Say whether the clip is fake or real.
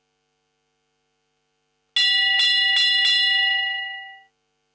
real